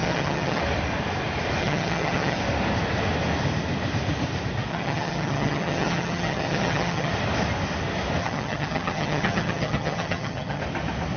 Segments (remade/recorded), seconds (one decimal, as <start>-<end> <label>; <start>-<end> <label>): 0.0-0.6 remade; 0.6-1.6 recorded; 1.6-2.4 remade; 2.4-4.7 recorded; 4.7-7.1 remade; 7.1-8.2 recorded; 8.2-10.6 remade; 10.6-11.2 recorded